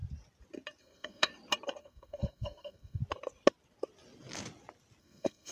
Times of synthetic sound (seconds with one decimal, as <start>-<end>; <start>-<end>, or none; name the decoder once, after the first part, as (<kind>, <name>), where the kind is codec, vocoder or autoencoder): 0.8-1.3 (codec, SNAC); 1.8-3.0; 5.0-5.5